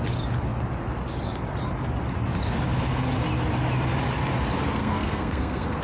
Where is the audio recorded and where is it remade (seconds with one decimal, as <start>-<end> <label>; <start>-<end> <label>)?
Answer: 0.0-4.8 recorded; 4.8-5.8 remade